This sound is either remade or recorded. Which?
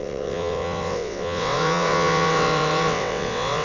remade